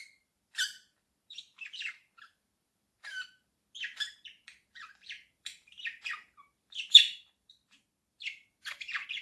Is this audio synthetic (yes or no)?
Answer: yes